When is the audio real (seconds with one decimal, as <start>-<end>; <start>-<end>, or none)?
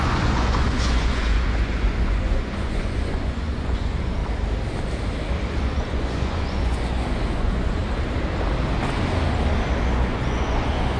4.2-5.6; 7.8-9.9